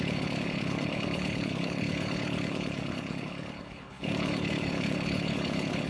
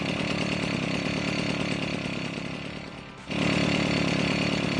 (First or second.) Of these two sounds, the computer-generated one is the first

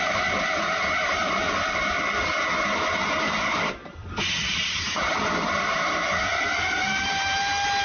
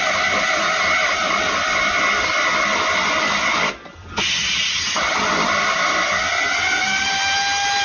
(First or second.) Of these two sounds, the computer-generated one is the first